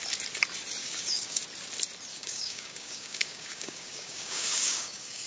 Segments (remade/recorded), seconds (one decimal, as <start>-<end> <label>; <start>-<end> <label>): 0.0-0.8 recorded; 0.8-1.4 remade; 1.4-2.1 recorded; 2.1-5.3 remade